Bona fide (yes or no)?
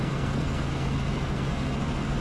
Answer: no